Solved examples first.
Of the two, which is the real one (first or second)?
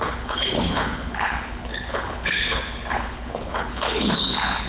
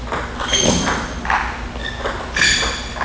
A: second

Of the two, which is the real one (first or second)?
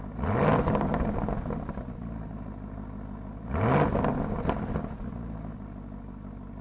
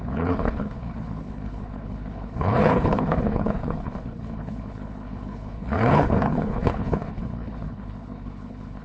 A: first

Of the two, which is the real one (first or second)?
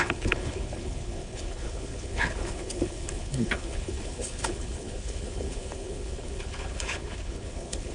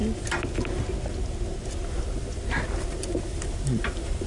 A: second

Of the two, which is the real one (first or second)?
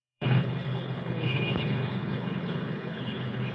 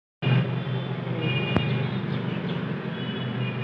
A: second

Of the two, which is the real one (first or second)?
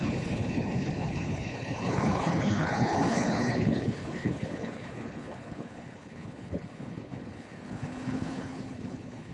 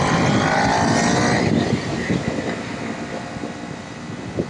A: second